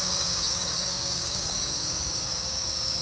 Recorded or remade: remade